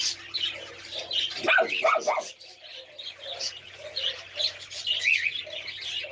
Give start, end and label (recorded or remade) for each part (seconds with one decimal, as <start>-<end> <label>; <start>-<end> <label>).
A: 0.0-6.1 recorded